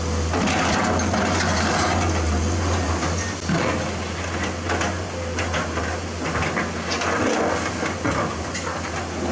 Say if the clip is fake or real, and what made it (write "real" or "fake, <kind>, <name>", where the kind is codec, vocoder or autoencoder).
real